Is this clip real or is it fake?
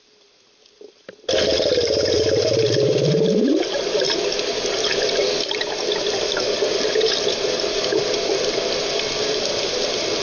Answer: real